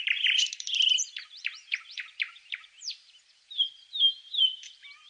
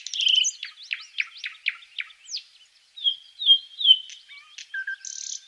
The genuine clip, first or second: second